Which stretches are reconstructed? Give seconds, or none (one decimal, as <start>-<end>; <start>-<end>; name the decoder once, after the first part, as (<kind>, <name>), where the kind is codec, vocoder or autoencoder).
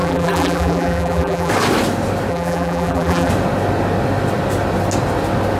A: 0.0-1.5 (vocoder, BigVGAN v2); 2.3-3.3